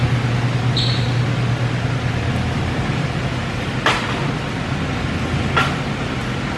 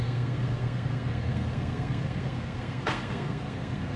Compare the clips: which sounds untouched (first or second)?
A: first